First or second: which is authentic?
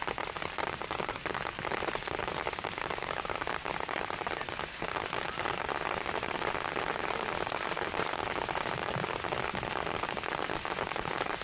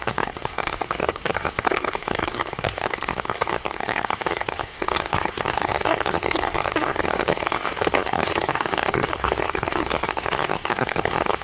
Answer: first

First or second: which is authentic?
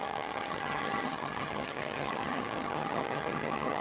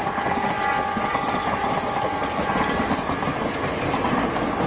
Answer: second